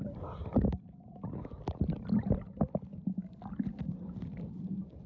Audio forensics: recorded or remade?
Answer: recorded